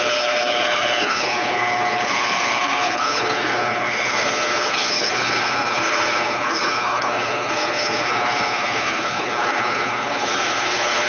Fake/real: fake